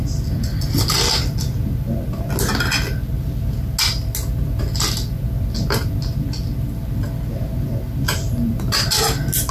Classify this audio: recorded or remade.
recorded